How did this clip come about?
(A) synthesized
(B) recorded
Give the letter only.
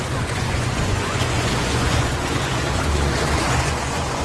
A